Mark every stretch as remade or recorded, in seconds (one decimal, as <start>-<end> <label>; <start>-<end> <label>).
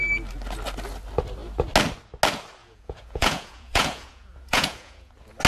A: 0.0-2.6 recorded; 2.6-5.1 remade; 5.1-5.5 recorded